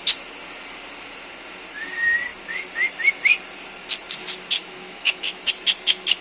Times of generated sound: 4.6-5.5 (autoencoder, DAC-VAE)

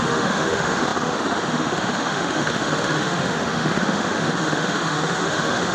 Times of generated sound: 0.0-5.7 (autoencoder, DAC-VAE)